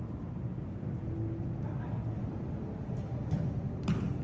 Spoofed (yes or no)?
no